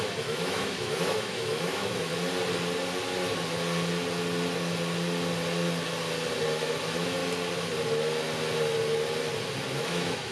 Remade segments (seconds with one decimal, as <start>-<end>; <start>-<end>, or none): 0.0-2.1; 6.6-7.2; 9.8-10.3